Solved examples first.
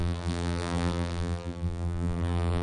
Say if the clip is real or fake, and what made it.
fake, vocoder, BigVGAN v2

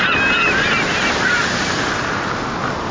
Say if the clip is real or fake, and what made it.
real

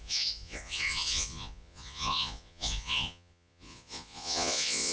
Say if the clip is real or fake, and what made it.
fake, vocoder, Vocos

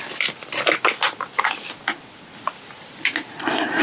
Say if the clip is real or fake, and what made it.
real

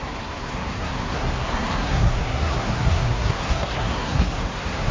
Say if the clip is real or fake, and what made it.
fake, codec, SNAC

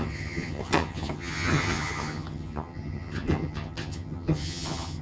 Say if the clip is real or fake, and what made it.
fake, vocoder, HiFi-GAN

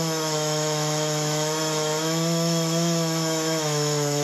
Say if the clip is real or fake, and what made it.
fake, autoencoder, DAC-VAE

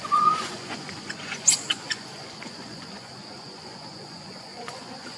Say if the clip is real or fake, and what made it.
fake, vocoder, Vocos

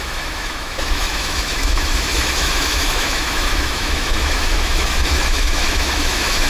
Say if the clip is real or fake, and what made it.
fake, autoencoder, DAC-VAE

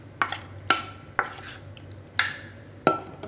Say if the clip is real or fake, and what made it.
real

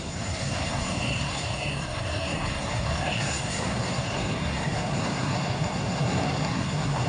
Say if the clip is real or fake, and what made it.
fake, codec, SNAC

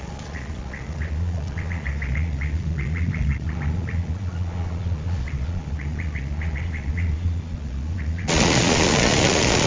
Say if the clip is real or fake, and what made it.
fake, vocoder, Vocos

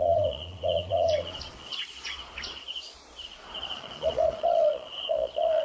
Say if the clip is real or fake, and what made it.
fake, vocoder, Vocos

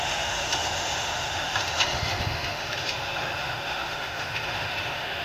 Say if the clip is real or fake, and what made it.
fake, autoencoder, DAC-VAE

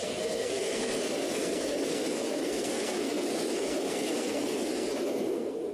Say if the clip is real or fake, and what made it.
fake, codec, SNAC